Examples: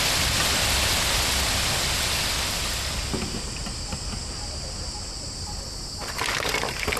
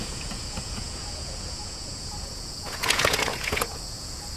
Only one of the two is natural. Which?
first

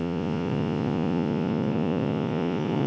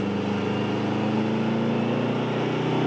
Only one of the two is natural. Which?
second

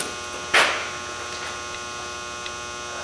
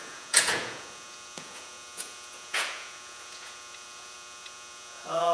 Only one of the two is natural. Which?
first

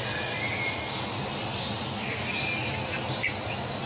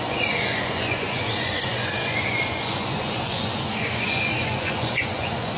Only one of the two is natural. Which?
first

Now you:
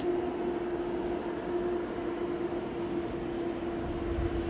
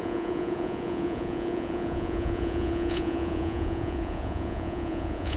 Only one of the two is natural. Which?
first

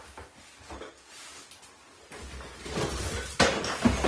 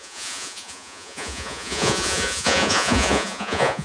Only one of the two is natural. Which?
first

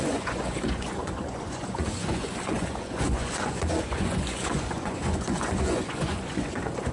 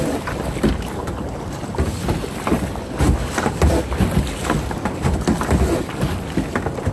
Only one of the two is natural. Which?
second